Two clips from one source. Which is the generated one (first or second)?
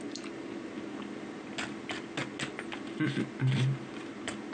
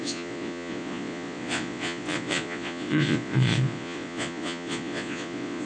second